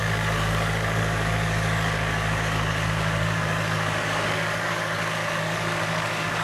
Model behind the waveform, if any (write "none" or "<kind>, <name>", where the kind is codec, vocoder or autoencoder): codec, DAC